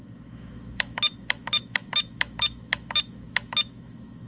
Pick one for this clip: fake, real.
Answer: fake